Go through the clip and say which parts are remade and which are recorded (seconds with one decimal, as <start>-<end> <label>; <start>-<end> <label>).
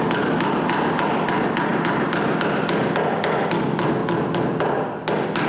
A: 0.0-5.5 recorded